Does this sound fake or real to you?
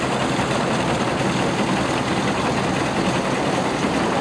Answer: real